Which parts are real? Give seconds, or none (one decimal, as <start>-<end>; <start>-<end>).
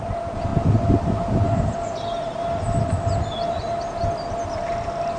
0.0-5.2